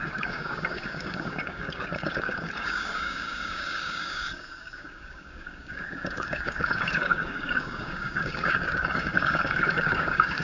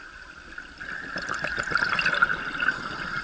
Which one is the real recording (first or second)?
second